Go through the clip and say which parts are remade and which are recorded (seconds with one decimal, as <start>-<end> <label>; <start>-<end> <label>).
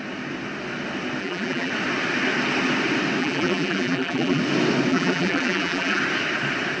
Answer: 0.0-1.2 recorded; 1.2-1.7 remade; 1.7-3.2 recorded; 3.2-4.4 remade; 4.4-4.9 recorded; 4.9-6.0 remade; 6.0-6.8 recorded